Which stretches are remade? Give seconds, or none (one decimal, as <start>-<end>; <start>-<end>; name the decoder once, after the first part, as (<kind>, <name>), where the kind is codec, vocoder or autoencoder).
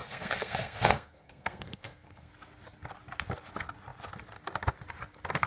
0.0-2.3 (codec, SNAC)